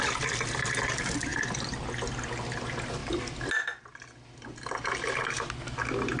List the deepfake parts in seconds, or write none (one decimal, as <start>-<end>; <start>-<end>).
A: none